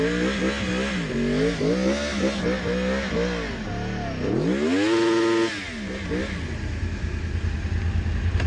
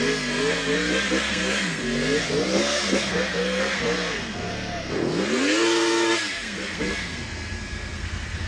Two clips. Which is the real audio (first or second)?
first